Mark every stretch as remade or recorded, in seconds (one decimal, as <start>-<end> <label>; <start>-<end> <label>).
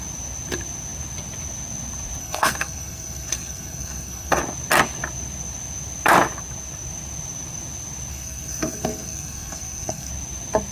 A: 0.0-2.2 recorded; 2.2-4.4 remade; 4.4-8.1 recorded; 8.1-10.1 remade; 10.1-10.7 recorded